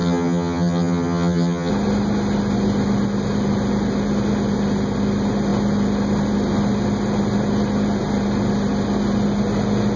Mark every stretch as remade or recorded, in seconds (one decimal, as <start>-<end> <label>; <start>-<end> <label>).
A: 0.0-1.7 remade; 1.7-10.0 recorded